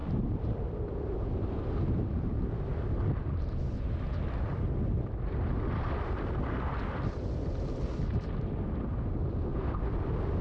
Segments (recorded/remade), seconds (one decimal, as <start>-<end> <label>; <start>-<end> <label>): 0.0-10.4 recorded